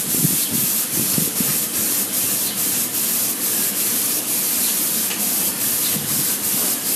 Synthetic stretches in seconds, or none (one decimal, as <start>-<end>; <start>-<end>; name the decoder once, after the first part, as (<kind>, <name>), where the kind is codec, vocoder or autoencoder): none